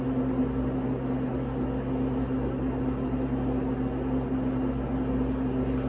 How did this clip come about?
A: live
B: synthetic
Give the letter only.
A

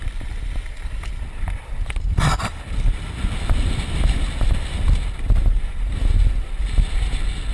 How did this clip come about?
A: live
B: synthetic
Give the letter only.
A